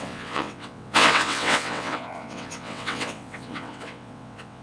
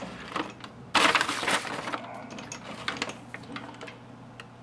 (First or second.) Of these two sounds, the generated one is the first